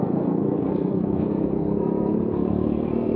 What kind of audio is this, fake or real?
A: fake